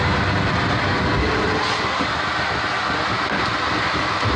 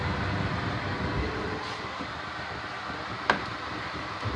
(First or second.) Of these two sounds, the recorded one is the first